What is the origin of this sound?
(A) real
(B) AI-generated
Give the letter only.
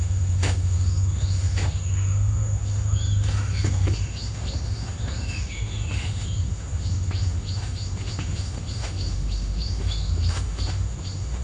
B